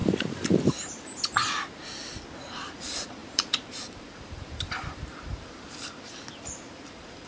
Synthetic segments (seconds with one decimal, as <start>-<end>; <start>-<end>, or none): 0.0-1.2; 3.2-5.6